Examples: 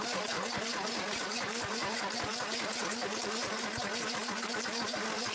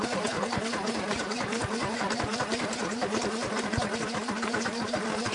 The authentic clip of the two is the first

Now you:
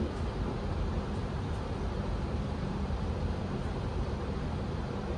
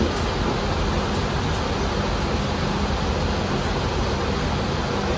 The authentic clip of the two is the second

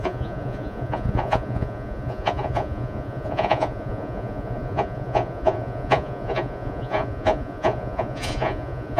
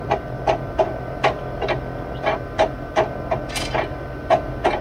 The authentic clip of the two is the second